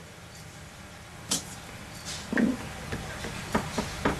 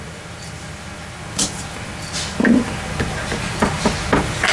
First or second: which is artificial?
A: first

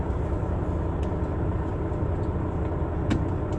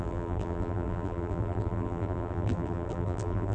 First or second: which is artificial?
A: second